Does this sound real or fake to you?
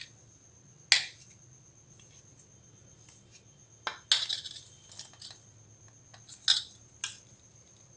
real